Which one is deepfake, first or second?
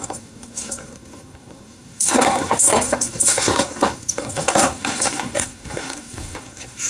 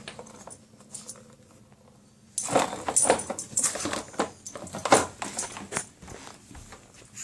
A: first